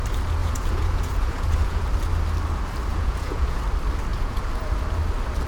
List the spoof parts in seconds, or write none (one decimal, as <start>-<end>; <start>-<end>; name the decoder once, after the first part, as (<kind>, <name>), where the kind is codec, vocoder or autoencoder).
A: 0.4-1.8 (vocoder, Vocos); 2.9-3.6; 4.1-4.7